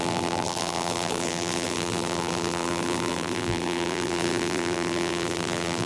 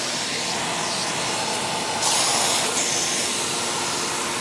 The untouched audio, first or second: second